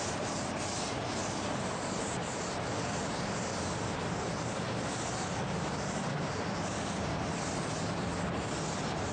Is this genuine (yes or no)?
yes